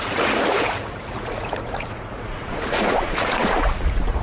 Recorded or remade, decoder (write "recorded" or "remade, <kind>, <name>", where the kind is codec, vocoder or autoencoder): remade, vocoder, Vocos